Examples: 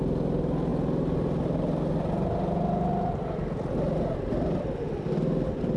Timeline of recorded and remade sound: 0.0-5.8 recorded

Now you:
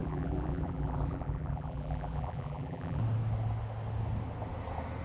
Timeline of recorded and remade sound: 0.0-3.0 remade; 3.0-5.0 recorded

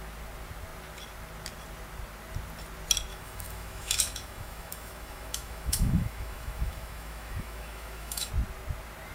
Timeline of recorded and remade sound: 0.0-3.1 recorded; 3.1-8.3 remade; 8.3-9.1 recorded

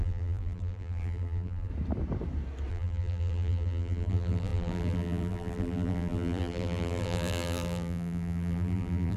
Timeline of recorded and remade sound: 0.0-1.7 remade; 1.7-2.7 recorded; 2.7-9.2 remade

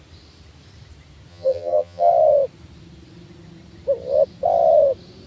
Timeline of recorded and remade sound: 0.0-1.3 recorded; 1.3-2.1 remade; 2.1-5.3 recorded

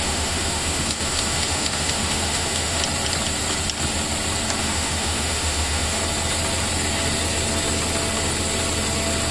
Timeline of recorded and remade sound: 0.0-2.8 remade; 2.8-4.6 recorded; 4.6-6.0 remade; 6.0-9.3 recorded